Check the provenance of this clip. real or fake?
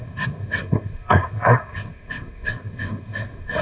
fake